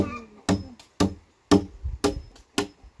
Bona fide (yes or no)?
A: yes